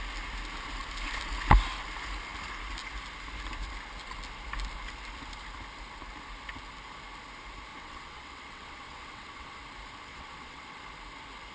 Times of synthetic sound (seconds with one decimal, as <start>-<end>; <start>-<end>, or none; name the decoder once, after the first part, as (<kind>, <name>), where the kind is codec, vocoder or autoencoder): 7.7-9.6 (vocoder, WaveNeXt); 10.1-10.8